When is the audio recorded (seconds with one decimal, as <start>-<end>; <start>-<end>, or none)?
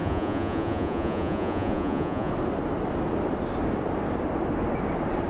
2.3-5.3